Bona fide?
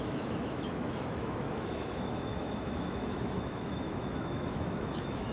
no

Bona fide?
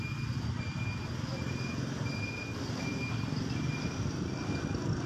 yes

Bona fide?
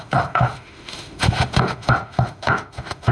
no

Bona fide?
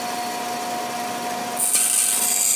yes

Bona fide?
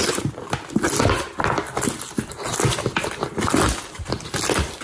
yes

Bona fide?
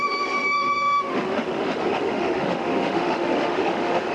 no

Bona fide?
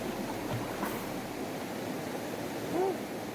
yes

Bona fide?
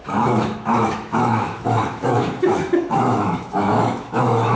no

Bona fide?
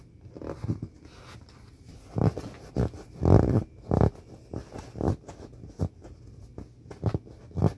yes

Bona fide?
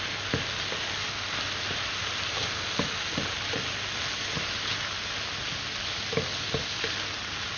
yes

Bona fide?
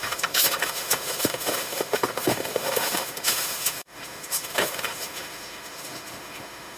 no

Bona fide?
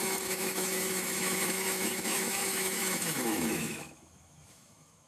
no